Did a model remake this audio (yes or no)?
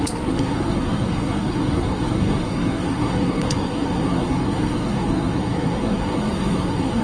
yes